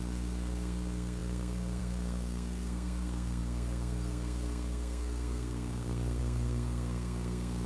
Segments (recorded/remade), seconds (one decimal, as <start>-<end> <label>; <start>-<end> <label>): 0.0-7.7 remade